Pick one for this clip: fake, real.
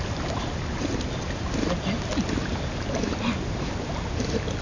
real